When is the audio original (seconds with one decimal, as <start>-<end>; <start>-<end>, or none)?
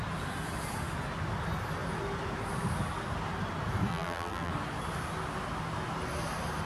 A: 0.0-3.9; 4.5-6.7